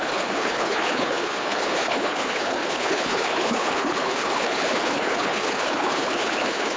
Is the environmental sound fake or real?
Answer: fake